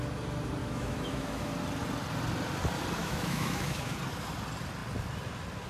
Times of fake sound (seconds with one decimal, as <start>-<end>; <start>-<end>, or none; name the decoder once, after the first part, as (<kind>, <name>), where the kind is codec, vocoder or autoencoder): 0.6-1.5 (autoencoder, DAC-VAE); 3.0-4.0